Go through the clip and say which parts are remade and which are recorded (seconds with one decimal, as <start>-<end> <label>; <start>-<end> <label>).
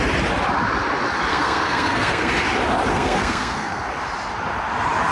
0.0-1.3 recorded; 1.3-2.3 remade; 2.3-2.9 recorded; 2.9-3.8 remade; 3.8-5.1 recorded